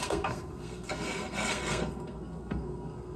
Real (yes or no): no